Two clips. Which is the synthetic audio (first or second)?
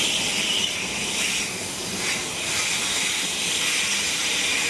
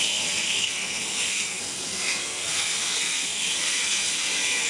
second